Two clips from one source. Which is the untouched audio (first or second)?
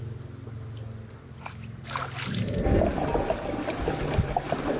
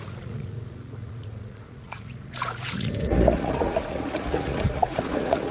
first